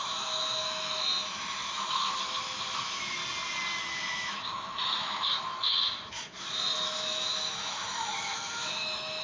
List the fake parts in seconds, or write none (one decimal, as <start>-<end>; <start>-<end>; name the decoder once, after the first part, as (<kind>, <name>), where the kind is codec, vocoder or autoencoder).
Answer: 0.0-3.2 (autoencoder, DAC-VAE); 3.8-9.2